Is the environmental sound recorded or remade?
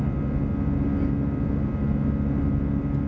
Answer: recorded